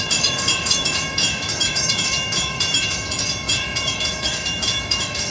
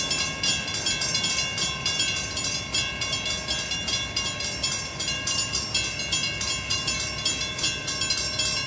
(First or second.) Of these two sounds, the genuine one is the second